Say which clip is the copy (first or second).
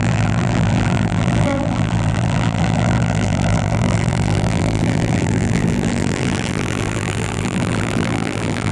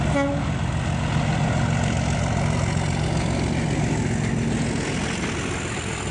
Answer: first